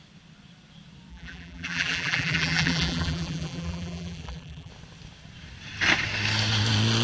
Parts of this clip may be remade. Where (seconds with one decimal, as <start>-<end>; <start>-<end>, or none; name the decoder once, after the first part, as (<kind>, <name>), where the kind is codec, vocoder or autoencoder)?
1.1-4.7 (vocoder, BigVGAN v2)

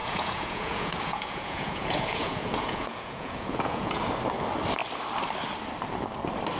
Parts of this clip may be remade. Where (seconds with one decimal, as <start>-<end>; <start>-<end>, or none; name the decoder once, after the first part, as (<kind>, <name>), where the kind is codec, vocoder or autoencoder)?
0.0-4.0 (vocoder, Vocos)

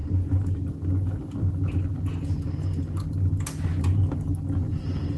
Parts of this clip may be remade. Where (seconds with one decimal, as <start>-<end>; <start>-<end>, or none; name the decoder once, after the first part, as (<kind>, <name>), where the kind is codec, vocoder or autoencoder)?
none

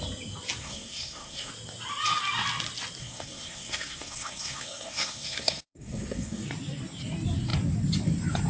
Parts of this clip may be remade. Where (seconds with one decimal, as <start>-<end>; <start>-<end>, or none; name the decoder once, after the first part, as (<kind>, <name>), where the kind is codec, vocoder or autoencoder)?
0.6-1.5 (codec, SNAC); 3.0-6.5

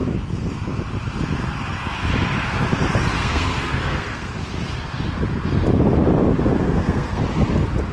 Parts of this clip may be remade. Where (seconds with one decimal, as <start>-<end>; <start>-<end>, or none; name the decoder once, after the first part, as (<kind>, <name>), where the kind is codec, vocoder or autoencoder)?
3.2-4.3 (codec, SNAC); 6.6-7.2

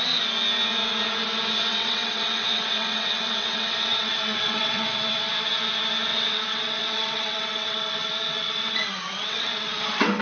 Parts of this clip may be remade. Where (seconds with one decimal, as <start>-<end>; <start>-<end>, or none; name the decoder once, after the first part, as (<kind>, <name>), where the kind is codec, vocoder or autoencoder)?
1.7-5.3 (vocoder, WaveNeXt); 6.1-10.2